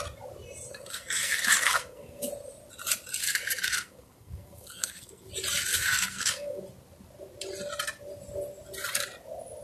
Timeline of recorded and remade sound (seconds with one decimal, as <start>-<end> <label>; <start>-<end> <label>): 0.0-0.7 recorded; 0.7-2.3 remade; 2.3-3.2 recorded; 3.2-5.3 remade; 5.3-5.7 recorded; 5.7-6.6 remade; 6.6-9.6 recorded